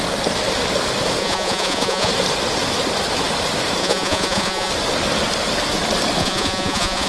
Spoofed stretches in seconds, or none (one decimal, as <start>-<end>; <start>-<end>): 1.2-2.1; 3.8-4.7; 6.2-7.1